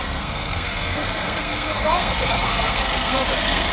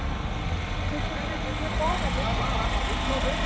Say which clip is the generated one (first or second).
first